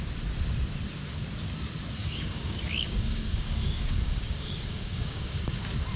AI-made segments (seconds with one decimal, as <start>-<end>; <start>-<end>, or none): 2.0-5.6